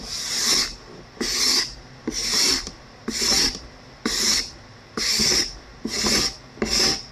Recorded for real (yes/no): yes